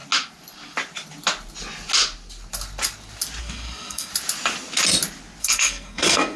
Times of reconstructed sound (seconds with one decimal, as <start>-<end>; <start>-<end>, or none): 3.4-4.1; 5.4-6.4